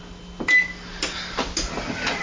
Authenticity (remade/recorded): recorded